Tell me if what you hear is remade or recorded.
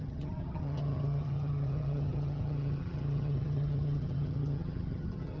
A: remade